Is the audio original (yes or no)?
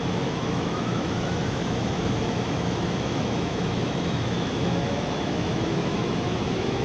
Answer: no